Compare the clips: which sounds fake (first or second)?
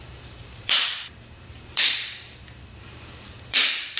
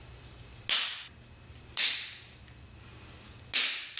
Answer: first